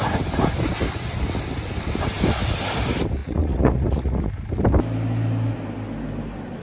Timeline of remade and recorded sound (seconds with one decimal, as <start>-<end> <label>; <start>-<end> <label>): 0.0-3.2 recorded; 3.2-4.3 remade; 4.3-6.6 recorded